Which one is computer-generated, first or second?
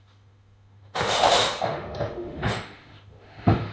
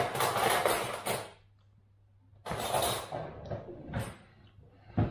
first